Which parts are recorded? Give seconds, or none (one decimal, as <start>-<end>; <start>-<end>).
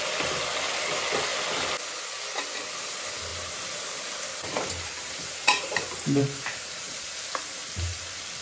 0.0-3.3; 7.2-8.4